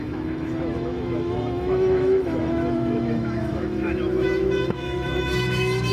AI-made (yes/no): yes